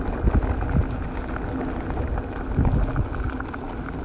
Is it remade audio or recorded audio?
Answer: recorded